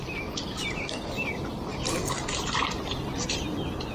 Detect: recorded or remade recorded